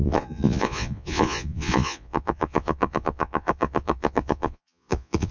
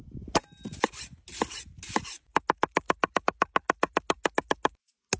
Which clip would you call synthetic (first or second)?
first